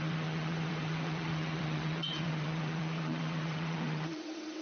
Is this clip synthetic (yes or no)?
yes